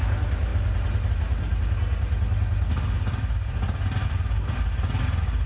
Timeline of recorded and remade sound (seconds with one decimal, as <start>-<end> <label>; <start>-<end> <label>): 0.0-5.5 recorded